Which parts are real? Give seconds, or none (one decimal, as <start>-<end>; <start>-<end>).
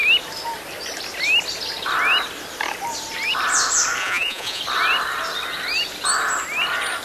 0.0-4.0; 4.6-7.0